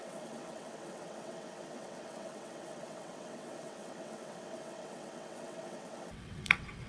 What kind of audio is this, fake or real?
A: fake